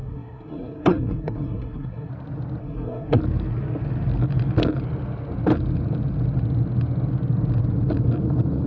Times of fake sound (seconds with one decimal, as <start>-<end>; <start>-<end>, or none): 0.0-2.1; 2.6-3.2

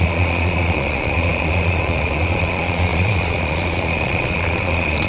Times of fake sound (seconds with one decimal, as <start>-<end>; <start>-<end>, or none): 0.0-5.1

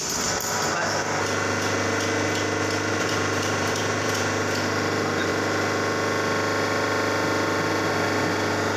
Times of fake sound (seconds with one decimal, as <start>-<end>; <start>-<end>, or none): 2.9-5.3

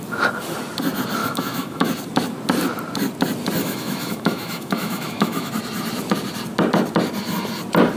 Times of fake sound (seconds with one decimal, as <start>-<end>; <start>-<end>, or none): 1.2-1.9; 3.6-5.5

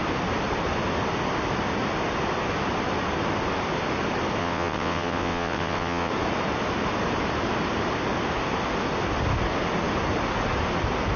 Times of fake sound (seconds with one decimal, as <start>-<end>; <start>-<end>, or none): 4.4-6.1

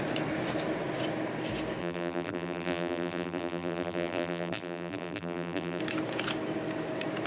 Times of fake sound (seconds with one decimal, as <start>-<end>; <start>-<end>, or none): 1.8-5.8

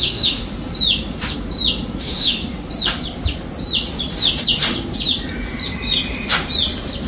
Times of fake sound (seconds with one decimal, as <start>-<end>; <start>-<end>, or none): 0.0-0.4; 2.0-2.4